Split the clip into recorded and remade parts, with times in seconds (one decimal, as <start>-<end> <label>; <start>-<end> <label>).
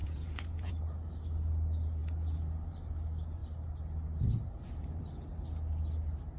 0.0-0.7 remade; 0.7-6.4 recorded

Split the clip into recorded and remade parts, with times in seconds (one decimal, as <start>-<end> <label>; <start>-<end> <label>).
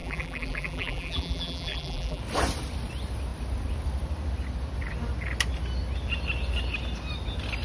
0.0-2.2 remade; 2.2-7.6 recorded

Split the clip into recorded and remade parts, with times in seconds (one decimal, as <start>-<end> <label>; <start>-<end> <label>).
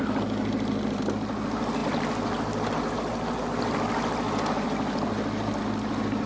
0.0-6.3 recorded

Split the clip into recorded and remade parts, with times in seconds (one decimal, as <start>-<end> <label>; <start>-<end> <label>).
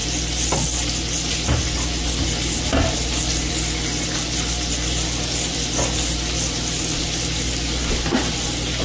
0.0-8.8 recorded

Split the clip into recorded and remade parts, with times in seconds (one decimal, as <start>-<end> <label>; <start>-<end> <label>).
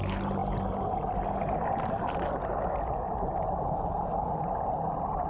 0.0-5.3 recorded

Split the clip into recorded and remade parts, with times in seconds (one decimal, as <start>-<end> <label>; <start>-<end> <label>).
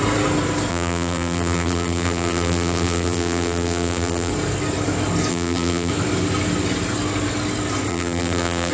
0.0-0.7 recorded; 0.7-4.3 remade; 4.3-5.3 recorded; 5.3-5.9 remade; 5.9-7.9 recorded; 7.9-8.7 remade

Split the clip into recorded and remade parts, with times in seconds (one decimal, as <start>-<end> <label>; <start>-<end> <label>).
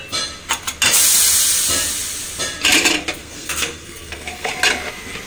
0.0-3.2 recorded; 3.2-4.5 remade; 4.5-5.3 recorded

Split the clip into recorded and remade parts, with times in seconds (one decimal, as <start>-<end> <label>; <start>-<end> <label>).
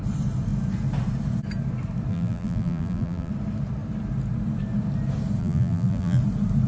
0.0-2.1 recorded; 2.1-3.3 remade; 3.3-5.4 recorded; 5.4-6.2 remade; 6.2-6.7 recorded